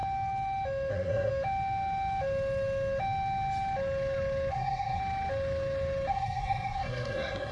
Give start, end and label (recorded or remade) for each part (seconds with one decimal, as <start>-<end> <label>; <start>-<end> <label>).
0.0-0.9 recorded; 0.9-1.3 remade; 1.3-4.5 recorded; 4.5-5.0 remade; 5.0-6.1 recorded; 6.1-7.5 remade